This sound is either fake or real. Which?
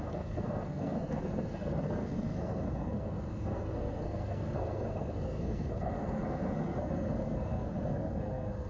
fake